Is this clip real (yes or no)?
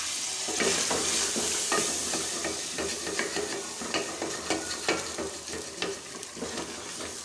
yes